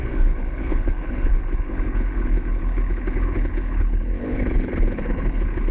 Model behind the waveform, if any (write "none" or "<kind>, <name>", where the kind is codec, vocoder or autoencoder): codec, HILCodec